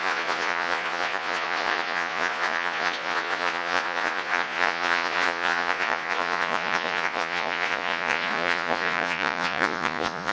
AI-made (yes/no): yes